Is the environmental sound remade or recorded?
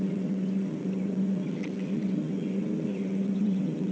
remade